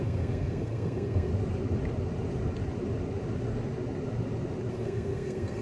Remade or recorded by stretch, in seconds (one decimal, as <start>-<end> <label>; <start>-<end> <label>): 0.0-1.3 remade; 1.3-4.7 recorded; 4.7-5.6 remade